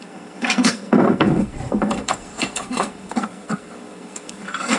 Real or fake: fake